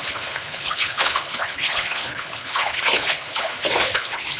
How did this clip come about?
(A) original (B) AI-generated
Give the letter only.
B